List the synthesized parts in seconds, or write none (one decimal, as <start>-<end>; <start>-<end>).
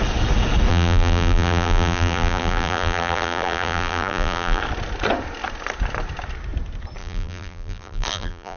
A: 0.7-4.6; 7.0-8.6